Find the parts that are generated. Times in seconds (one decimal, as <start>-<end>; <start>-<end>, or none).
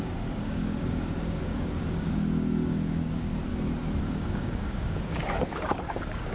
0.0-3.5; 4.0-6.3